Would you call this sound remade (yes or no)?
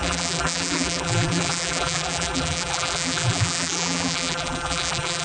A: yes